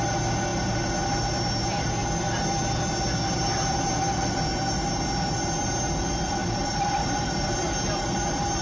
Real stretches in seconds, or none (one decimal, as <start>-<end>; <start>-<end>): 0.0-6.4; 6.9-8.6